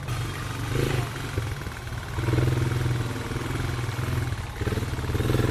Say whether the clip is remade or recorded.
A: recorded